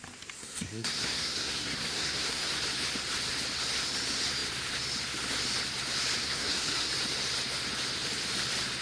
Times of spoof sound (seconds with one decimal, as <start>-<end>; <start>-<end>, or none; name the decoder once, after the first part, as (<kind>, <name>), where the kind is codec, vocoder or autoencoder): 0.4-2.6 (codec, SNAC); 6.2-6.9